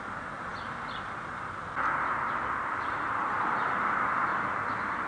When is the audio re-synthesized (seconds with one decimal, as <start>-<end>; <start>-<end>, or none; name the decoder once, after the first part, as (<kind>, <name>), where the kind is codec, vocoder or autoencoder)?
none